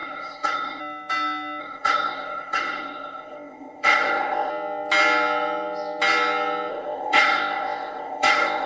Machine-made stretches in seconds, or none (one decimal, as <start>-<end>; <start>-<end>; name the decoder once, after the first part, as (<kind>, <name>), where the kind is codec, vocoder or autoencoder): 0.0-0.8 (codec, ZipCodec); 1.6-4.5; 6.7-8.7